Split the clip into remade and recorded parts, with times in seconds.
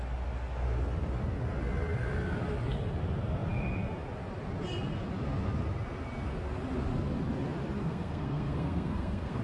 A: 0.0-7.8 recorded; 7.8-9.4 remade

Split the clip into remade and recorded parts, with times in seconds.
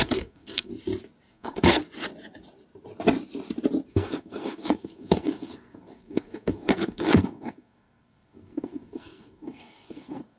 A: 0.0-0.7 remade; 0.7-1.3 recorded; 1.3-1.8 remade; 1.8-3.9 recorded; 3.9-10.4 remade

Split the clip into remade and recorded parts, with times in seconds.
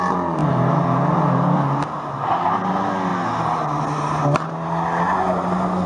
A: 0.0-5.9 recorded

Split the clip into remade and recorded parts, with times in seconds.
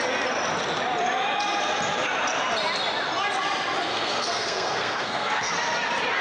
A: 0.0-3.9 recorded; 3.9-5.5 remade; 5.5-6.2 recorded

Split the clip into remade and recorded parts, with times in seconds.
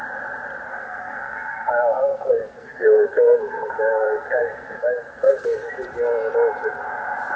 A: 0.0-0.7 recorded; 0.7-1.7 remade; 1.7-2.1 recorded; 2.1-5.7 remade; 5.7-7.4 recorded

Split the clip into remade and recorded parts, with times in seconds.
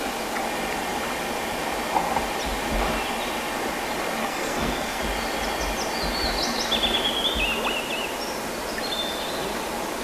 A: 0.0-4.2 recorded; 4.2-5.0 remade; 5.0-10.0 recorded